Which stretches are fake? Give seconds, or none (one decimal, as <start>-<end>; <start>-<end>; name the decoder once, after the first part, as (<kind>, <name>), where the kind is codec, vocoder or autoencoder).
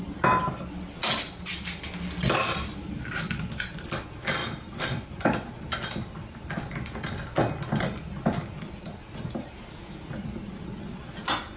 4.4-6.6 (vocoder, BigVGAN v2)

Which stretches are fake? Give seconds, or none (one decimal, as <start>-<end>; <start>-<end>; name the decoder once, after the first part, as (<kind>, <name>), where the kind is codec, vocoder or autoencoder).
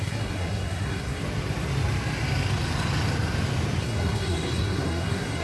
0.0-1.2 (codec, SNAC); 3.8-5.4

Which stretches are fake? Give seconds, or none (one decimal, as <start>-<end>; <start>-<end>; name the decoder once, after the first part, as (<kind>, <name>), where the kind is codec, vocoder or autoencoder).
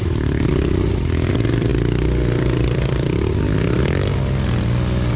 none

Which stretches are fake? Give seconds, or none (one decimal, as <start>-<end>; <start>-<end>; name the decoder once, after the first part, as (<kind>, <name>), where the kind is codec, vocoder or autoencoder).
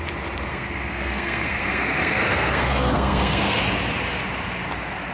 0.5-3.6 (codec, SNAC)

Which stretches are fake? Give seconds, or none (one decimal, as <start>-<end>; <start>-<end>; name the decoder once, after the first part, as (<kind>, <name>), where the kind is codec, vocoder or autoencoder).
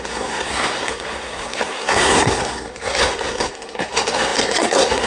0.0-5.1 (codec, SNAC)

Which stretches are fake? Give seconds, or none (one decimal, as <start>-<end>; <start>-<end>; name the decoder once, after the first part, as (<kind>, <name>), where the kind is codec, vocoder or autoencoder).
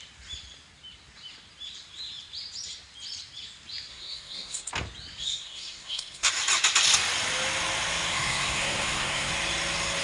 3.9-4.7 (codec, SNAC); 5.2-6.3; 8.1-9.3